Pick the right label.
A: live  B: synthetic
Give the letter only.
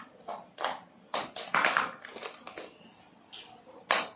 A